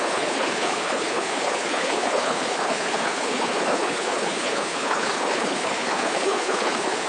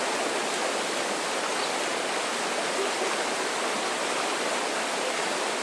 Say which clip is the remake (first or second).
first